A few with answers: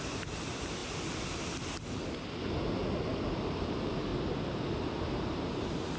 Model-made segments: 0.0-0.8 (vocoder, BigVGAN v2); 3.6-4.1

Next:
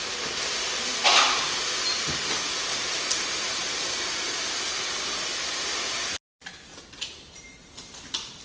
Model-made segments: none